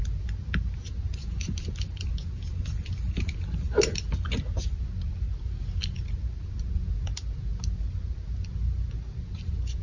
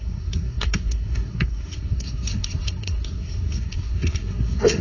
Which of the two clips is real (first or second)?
first